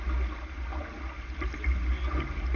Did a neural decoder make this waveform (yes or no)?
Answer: no